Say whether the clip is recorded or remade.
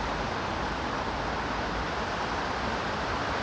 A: remade